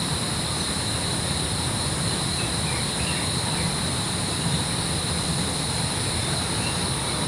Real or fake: real